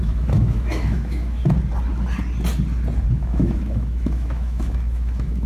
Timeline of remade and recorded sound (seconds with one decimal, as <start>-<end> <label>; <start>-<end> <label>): 0.0-1.4 remade; 1.4-3.1 recorded; 3.1-5.5 remade